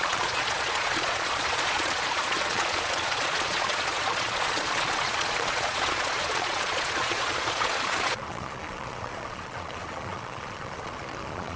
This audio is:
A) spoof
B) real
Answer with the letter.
A